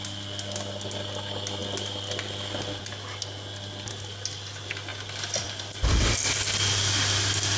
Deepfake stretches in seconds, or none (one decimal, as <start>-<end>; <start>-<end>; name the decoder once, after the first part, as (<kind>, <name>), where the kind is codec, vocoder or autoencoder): 4.9-5.5 (vocoder, BigVGAN v2)